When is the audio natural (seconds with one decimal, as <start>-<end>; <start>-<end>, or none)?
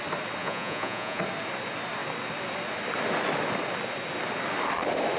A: 0.0-0.4; 1.2-5.2